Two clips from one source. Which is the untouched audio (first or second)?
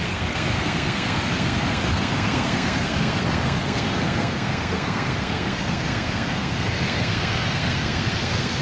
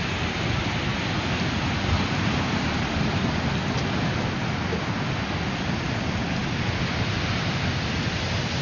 second